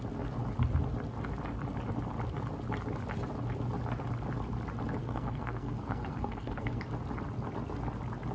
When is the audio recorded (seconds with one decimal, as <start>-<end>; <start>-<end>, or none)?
0.0-5.0; 6.8-8.3